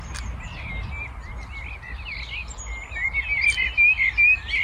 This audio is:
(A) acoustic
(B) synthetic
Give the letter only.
A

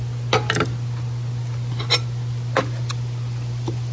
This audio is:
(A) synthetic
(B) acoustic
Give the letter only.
B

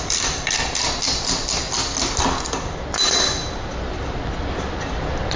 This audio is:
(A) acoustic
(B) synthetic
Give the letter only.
A